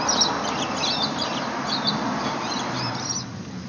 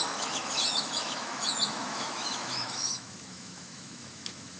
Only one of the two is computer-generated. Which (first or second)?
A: second